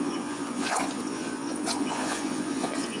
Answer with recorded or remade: remade